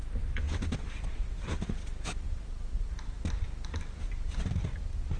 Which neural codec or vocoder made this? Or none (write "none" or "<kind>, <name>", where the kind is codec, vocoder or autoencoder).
none